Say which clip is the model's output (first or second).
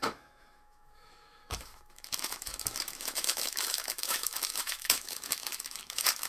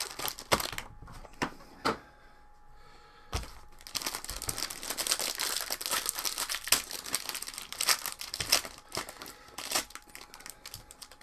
first